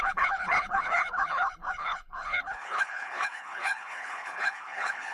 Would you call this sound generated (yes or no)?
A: yes